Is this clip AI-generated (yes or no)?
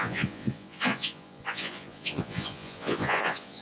yes